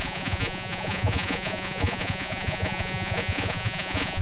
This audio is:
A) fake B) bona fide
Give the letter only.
A